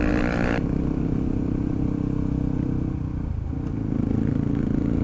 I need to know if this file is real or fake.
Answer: real